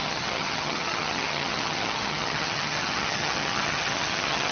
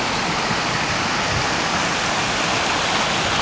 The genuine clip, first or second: second